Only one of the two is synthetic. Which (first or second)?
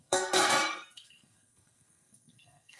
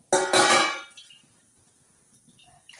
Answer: first